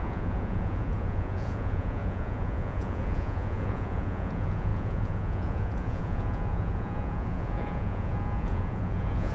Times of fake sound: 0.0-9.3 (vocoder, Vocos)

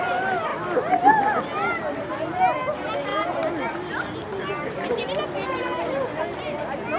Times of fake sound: none

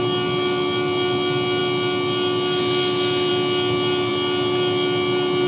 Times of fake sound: none

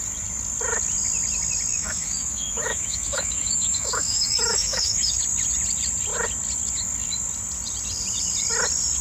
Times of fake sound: 1.7-5.2 (autoencoder, DAC-VAE)

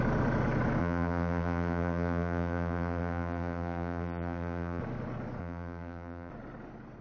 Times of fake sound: 0.8-4.8 (vocoder, BigVGAN v2); 5.4-6.3

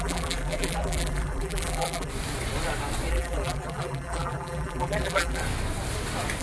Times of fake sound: 0.0-2.1 (vocoder, BigVGAN v2); 3.1-5.4

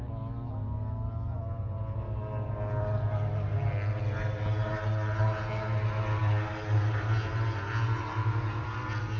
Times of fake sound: none